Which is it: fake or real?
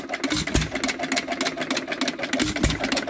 real